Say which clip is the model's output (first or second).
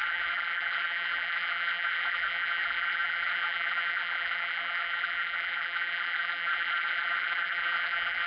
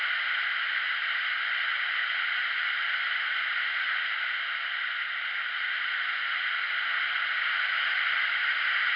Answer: first